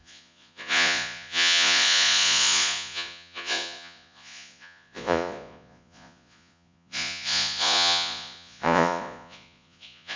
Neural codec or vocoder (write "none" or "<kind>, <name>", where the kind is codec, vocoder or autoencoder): vocoder, Vocos